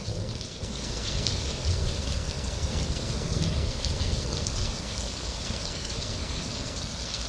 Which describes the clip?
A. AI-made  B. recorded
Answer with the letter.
A